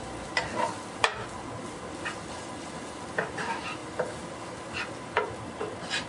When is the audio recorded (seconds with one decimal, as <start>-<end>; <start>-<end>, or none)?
0.0-6.1